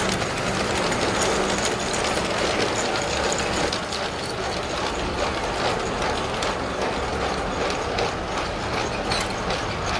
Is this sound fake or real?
real